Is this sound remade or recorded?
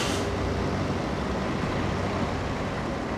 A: recorded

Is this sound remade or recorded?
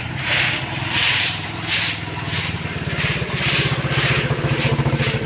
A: remade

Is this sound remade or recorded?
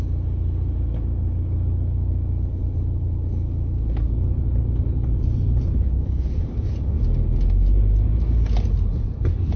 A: recorded